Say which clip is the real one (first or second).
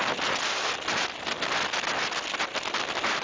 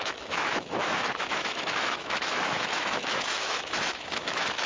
first